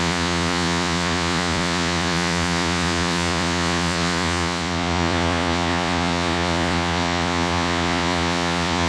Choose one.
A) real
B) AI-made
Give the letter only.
B